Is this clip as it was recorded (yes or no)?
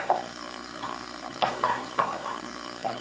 no